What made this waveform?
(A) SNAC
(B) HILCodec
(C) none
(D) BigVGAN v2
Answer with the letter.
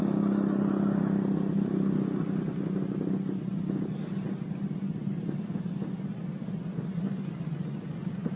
C